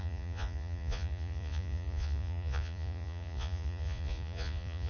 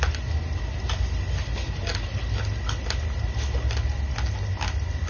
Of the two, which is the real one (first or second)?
second